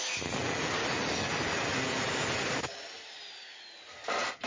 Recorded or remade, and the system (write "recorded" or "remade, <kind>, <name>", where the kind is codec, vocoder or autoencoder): recorded